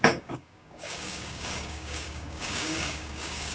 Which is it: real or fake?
fake